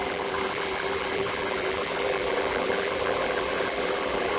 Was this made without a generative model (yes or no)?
no